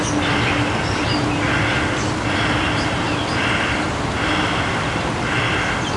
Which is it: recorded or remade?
recorded